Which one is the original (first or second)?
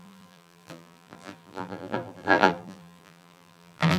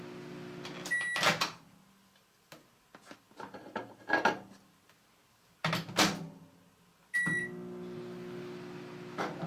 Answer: second